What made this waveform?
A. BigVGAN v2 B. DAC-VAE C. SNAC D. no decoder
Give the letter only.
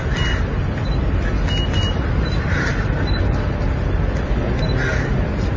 D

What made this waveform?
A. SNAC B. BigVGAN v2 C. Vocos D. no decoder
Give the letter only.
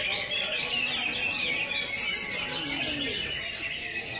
D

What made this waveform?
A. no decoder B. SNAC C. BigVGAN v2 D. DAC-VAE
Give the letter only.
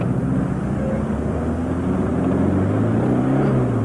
A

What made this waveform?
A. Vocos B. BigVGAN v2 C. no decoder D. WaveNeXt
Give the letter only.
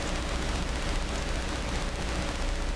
C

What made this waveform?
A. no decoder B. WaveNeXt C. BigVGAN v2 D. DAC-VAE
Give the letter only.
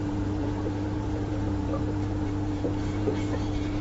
C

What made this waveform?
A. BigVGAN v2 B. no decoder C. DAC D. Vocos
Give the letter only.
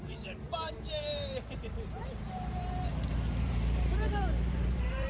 A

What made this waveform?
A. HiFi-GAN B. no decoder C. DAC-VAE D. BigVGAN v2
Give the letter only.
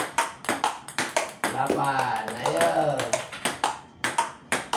D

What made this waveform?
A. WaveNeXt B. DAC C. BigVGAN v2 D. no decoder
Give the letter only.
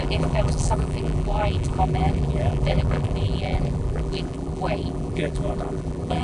C